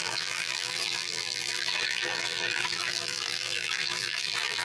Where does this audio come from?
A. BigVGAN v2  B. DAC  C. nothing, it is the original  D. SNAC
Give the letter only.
A